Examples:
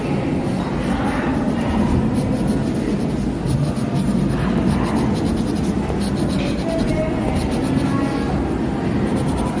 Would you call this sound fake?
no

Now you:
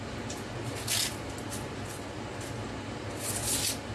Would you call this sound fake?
no